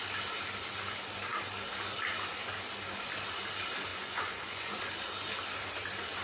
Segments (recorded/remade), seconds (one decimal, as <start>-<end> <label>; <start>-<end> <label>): 0.0-3.9 recorded; 3.9-4.8 remade; 4.8-6.2 recorded